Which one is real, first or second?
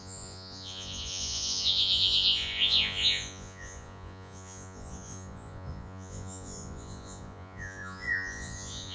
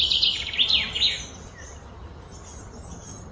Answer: second